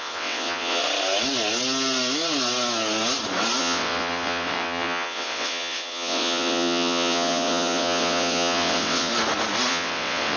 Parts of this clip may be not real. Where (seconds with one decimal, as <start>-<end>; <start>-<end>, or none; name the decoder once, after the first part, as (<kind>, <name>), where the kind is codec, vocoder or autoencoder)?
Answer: 0.0-0.8 (vocoder, WaveNeXt); 3.6-9.1; 9.7-10.4